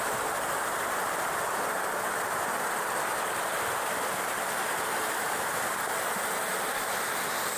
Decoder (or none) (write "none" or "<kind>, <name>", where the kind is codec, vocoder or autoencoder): none